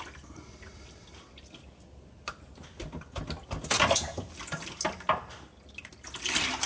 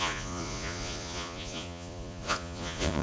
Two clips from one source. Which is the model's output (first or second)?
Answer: second